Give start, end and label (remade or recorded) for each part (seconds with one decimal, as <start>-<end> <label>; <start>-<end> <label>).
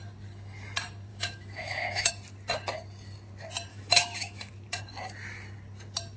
0.0-1.1 recorded; 1.1-2.1 remade; 2.1-3.7 recorded; 3.7-4.5 remade; 4.5-6.2 recorded